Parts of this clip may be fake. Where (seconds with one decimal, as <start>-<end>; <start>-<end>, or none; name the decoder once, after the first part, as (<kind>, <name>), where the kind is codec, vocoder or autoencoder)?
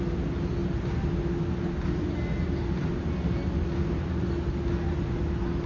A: none